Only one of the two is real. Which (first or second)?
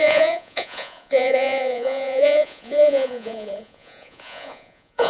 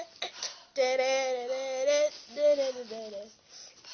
second